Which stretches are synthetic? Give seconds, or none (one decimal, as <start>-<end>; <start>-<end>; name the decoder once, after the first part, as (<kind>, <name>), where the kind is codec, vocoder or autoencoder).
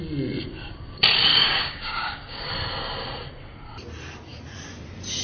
1.3-2.5 (codec, DAC)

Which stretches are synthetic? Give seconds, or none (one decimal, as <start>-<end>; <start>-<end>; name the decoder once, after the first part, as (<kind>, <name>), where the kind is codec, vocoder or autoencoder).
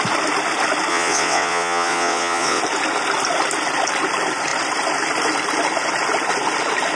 0.9-2.6 (vocoder, WaveNeXt)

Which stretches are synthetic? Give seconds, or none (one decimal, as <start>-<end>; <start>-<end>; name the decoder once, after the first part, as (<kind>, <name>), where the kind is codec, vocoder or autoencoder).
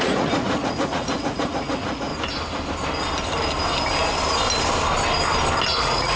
0.0-2.1 (vocoder, Vocos); 5.8-6.2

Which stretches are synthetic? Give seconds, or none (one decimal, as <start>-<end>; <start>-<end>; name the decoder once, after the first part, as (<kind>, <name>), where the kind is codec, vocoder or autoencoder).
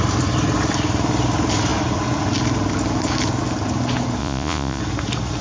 4.2-4.8 (vocoder, Vocos)